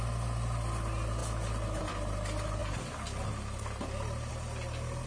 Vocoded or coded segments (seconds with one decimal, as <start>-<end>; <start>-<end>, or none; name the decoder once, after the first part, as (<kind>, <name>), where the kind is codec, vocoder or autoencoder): none